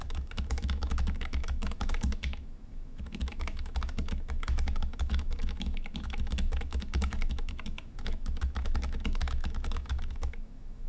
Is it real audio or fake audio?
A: fake